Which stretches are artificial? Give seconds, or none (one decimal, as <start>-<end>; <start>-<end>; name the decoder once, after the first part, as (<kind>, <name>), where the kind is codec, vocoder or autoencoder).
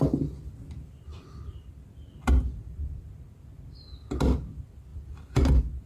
4.9-5.4 (vocoder, BigVGAN v2)